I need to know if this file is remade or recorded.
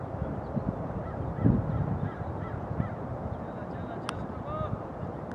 recorded